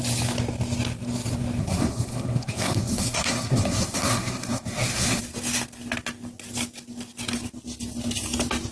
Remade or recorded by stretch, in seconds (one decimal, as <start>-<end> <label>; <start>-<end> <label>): 0.0-1.6 recorded; 1.6-5.2 remade; 5.2-8.7 recorded